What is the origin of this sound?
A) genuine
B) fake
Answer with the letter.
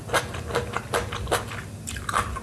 A